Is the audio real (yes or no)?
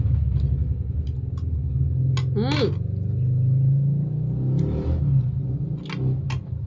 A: yes